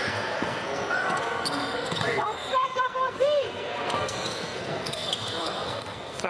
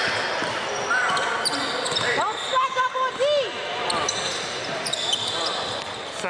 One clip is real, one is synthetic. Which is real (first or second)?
second